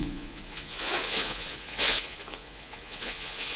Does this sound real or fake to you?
fake